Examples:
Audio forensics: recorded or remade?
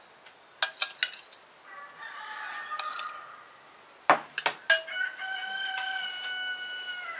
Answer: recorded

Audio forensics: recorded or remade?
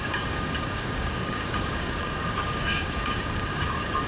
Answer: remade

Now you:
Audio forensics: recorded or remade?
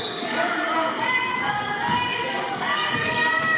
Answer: remade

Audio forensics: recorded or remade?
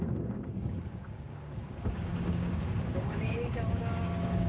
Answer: remade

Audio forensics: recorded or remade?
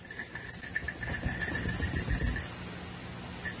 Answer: recorded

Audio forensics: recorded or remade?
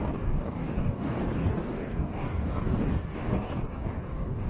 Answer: remade